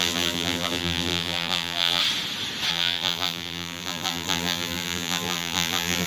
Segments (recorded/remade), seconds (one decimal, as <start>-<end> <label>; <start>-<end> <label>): 0.0-2.0 remade; 2.0-2.7 recorded; 2.7-6.1 remade